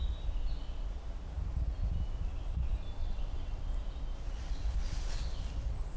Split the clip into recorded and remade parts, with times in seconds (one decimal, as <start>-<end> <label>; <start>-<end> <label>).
0.0-3.0 recorded; 3.0-3.6 remade; 3.6-6.0 recorded